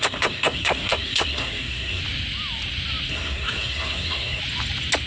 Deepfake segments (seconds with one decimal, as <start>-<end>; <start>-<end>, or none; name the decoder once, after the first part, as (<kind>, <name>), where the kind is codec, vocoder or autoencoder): 0.0-2.0 (codec, SNAC); 3.1-4.4